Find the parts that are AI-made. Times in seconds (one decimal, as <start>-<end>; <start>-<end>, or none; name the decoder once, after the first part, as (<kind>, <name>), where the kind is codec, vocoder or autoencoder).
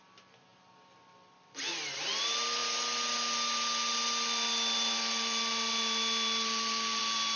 none